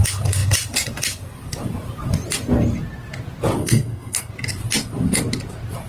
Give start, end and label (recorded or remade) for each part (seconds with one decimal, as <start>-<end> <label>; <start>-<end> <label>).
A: 0.0-3.6 recorded; 3.6-4.3 remade; 4.3-5.9 recorded